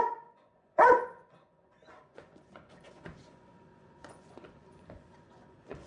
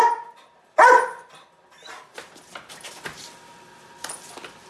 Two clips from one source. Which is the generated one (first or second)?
first